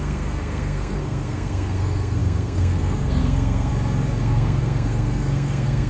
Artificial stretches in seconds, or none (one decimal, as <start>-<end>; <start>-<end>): 0.0-3.7; 4.2-5.9